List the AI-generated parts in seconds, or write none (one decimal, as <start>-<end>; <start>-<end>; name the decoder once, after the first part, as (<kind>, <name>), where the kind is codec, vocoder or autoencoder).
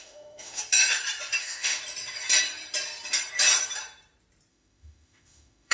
0.0-0.6 (autoencoder, DAC-VAE); 1.4-1.8; 4.5-5.7